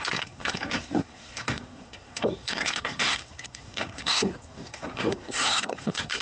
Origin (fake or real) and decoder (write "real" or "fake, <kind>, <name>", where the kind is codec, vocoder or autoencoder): fake, codec, SNAC